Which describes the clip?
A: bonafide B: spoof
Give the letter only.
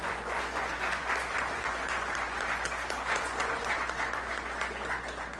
B